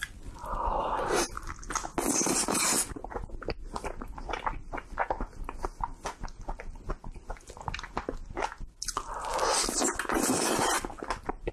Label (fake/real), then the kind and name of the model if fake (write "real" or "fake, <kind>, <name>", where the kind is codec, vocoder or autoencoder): real